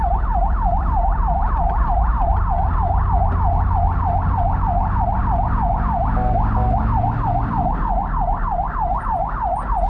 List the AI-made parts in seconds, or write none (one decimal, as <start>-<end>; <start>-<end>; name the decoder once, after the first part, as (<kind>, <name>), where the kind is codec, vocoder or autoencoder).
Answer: none